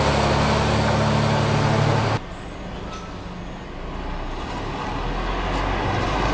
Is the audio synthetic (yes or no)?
no